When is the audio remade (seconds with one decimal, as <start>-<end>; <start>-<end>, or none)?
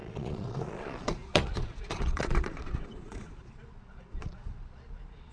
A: 0.0-5.3